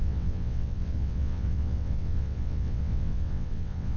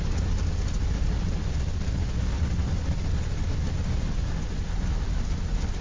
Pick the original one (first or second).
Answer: second